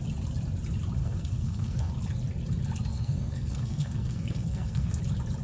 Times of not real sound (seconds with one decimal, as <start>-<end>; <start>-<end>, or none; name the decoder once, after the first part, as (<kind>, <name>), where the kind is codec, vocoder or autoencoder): 1.0-1.9 (codec, SNAC); 2.9-5.0